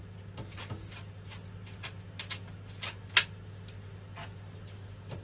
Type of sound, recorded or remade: recorded